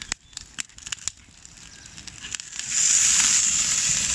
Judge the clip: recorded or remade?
recorded